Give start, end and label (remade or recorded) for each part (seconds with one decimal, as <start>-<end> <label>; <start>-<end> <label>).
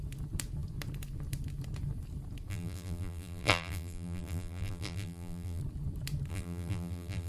0.0-2.5 recorded; 2.5-5.6 remade; 5.6-6.3 recorded; 6.3-7.3 remade